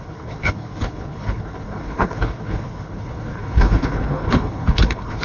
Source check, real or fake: fake